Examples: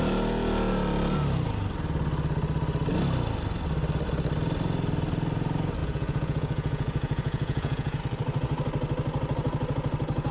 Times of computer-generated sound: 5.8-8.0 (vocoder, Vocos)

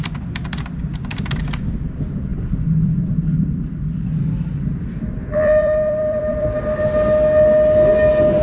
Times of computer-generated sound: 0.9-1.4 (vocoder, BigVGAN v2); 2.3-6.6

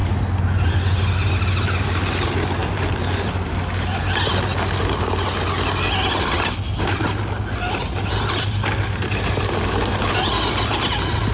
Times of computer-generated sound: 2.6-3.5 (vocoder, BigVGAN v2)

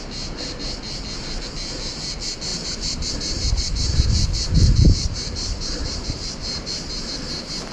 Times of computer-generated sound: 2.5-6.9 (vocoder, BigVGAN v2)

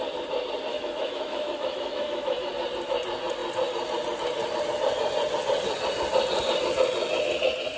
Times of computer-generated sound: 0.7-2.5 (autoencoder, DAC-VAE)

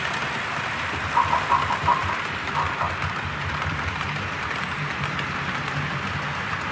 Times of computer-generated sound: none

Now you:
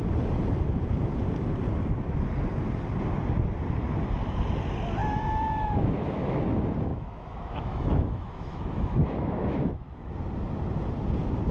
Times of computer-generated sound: 5.0-6.4 (autoencoder, DAC-VAE); 6.9-10.1